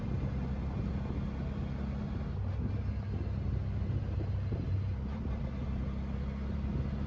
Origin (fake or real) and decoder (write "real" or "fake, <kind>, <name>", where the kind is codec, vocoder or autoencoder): real